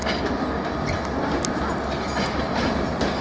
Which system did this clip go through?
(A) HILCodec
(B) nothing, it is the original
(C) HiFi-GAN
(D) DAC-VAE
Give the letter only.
B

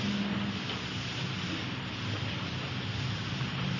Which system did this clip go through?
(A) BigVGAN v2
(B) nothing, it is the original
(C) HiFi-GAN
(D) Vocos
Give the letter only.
B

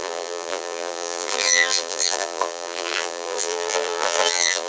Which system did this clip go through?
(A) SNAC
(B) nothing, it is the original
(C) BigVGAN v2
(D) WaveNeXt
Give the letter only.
C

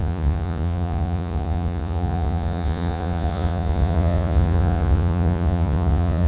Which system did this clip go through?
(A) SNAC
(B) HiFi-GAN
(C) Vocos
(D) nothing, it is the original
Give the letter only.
C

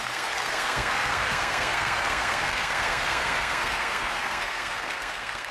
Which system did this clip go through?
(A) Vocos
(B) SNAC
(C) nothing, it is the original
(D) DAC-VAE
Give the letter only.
B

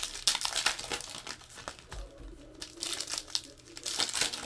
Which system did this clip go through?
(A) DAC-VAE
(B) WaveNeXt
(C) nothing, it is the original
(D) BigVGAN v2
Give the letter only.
C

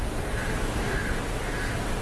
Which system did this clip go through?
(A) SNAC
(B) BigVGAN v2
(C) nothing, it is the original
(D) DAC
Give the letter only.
C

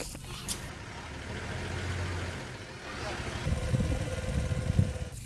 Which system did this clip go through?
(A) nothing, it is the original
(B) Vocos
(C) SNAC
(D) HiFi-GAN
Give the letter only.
A